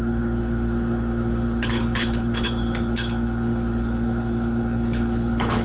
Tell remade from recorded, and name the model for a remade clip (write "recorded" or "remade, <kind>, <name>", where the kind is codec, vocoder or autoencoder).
remade, codec, HILCodec